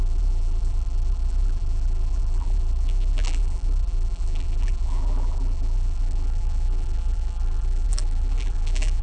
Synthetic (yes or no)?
yes